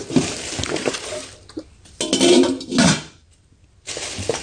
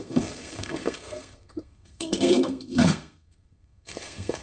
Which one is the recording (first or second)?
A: first